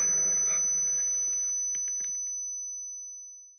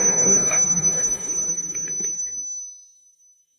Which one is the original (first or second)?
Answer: first